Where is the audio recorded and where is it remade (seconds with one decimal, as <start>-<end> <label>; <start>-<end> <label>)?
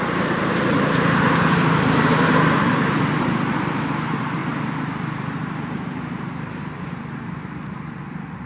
0.0-8.5 remade